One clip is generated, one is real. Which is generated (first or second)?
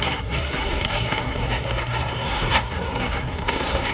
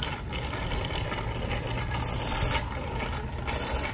first